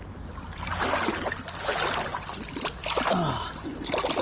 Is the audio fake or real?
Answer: real